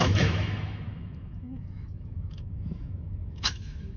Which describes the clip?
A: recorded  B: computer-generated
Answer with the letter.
B